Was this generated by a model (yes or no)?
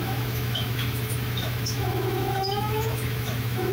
yes